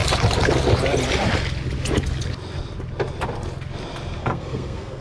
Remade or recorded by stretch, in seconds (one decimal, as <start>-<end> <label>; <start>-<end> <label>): 0.0-4.2 recorded; 4.2-5.0 remade